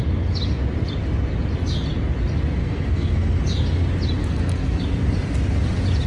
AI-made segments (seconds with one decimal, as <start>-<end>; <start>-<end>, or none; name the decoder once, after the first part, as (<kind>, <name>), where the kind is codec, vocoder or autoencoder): 2.6-3.4 (codec, SNAC); 4.2-4.8